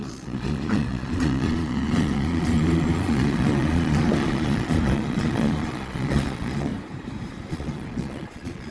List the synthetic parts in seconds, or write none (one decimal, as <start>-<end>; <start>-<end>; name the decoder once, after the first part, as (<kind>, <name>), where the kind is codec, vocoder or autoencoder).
0.0-6.7 (vocoder, Vocos); 7.5-8.7